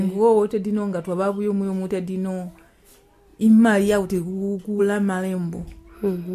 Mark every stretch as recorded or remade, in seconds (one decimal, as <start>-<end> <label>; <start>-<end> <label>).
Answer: 0.0-6.3 recorded